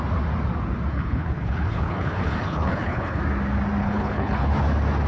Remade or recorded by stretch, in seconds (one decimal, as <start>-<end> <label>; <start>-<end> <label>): 0.0-0.9 recorded; 0.9-3.2 remade; 3.2-3.8 recorded; 3.8-4.5 remade; 4.5-5.1 recorded